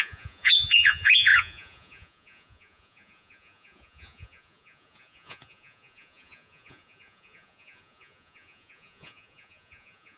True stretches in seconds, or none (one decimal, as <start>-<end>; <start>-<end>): none